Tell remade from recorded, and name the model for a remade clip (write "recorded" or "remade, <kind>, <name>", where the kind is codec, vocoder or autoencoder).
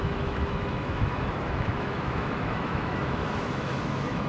remade, autoencoder, DAC-VAE